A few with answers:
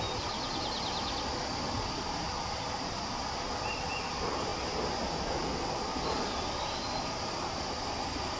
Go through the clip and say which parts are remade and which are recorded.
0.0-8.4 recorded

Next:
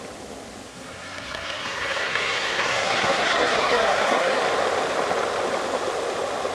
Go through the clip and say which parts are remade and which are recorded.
0.0-0.7 recorded; 0.7-4.4 remade; 4.4-6.5 recorded